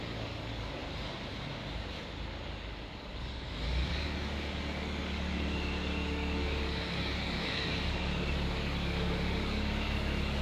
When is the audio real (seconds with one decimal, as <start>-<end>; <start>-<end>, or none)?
0.8-2.4

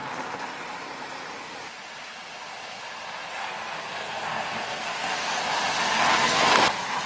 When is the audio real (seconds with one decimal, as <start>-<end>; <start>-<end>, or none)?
0.0-3.4; 5.4-6.1; 6.6-7.1

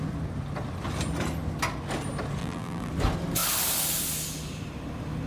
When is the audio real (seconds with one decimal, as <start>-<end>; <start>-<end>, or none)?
0.0-2.4; 2.9-5.3